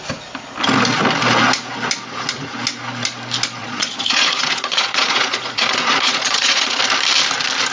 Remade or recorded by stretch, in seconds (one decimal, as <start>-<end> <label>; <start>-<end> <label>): 0.0-3.6 recorded; 3.6-6.8 remade; 6.8-7.7 recorded